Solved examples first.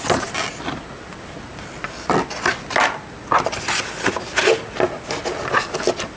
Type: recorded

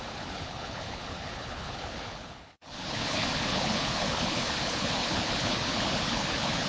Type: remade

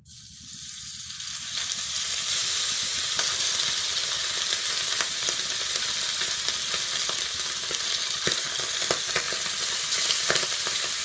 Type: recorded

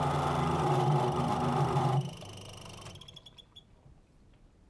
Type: recorded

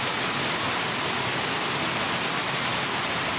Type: recorded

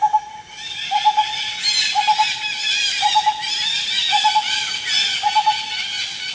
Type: recorded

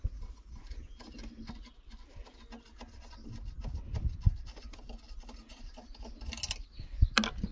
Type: recorded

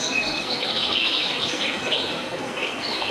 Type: remade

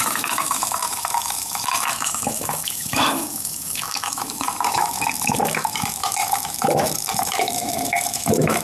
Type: remade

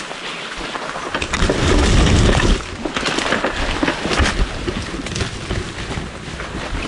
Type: recorded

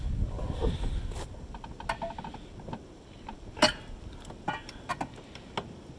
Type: recorded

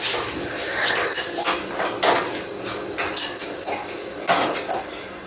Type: recorded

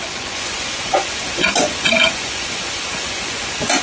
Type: remade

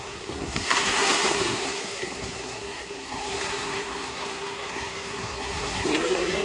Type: remade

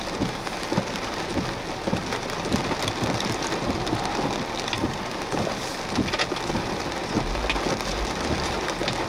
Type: recorded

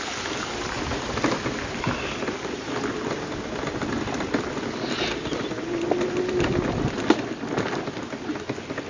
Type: recorded